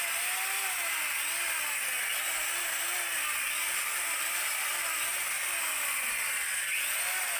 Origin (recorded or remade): recorded